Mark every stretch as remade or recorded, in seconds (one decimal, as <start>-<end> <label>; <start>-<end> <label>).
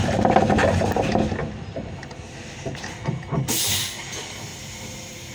0.0-1.4 recorded; 1.4-2.0 remade; 2.0-4.5 recorded; 4.5-5.3 remade